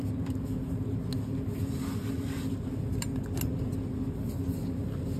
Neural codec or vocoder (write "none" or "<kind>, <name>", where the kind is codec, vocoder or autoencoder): none